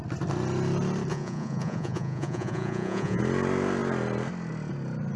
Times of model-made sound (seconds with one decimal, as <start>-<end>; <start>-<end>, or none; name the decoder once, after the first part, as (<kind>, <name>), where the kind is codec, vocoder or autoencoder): 1.1-3.2 (vocoder, Vocos)